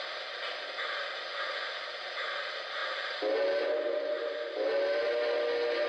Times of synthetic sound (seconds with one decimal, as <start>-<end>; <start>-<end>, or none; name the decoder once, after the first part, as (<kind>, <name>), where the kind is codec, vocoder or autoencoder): none